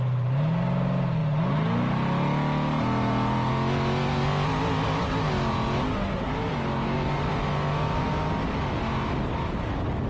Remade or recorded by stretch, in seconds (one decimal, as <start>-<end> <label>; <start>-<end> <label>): 0.0-10.1 recorded